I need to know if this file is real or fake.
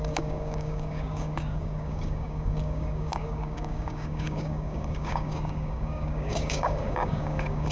fake